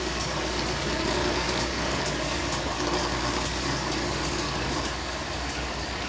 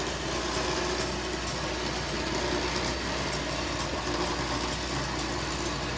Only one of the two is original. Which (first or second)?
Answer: second